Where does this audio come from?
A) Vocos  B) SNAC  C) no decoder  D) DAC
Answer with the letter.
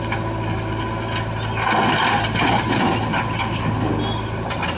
C